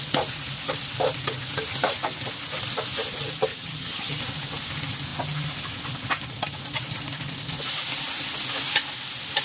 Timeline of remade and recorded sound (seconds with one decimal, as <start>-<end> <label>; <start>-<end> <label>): 0.0-3.5 recorded; 3.5-4.2 remade; 4.2-9.4 recorded